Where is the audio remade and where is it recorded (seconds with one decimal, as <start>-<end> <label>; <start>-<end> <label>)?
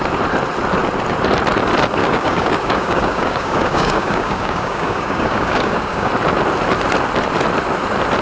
0.0-2.0 recorded; 2.0-6.1 remade; 6.1-8.2 recorded